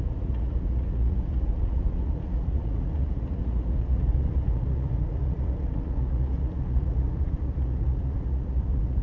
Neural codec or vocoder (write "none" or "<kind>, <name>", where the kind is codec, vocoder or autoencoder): vocoder, Vocos